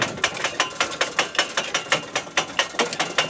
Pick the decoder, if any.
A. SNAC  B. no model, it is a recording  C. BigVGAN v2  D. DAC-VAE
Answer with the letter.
B